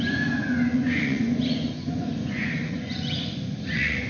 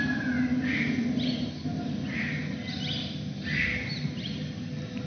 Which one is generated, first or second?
first